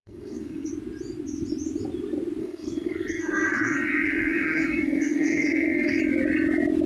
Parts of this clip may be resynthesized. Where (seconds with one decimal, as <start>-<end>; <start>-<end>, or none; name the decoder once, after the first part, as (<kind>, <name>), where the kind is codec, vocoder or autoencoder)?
0.0-0.7 (codec, SNAC); 2.4-6.0

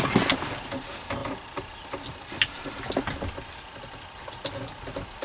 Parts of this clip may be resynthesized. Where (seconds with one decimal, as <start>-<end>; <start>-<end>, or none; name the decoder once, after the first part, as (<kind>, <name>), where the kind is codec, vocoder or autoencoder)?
none

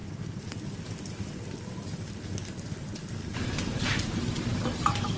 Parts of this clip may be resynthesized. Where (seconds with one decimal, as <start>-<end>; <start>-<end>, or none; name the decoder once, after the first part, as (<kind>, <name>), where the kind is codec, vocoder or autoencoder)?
none

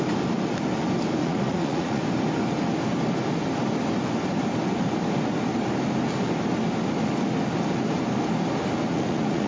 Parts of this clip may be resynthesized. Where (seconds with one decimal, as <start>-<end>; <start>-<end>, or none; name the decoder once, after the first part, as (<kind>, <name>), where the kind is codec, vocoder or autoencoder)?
1.2-2.0 (vocoder, Vocos); 8.9-9.5